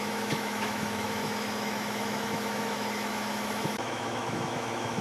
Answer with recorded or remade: remade